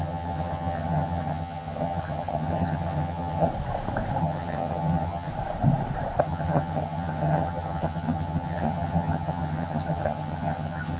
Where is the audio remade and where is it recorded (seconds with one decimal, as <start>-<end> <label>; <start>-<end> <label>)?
0.0-3.5 remade; 3.5-4.2 recorded; 4.2-5.3 remade; 5.3-6.2 recorded; 6.2-11.0 remade